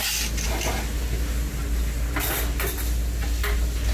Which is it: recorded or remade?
recorded